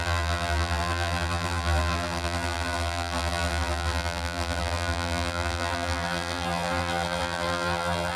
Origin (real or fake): fake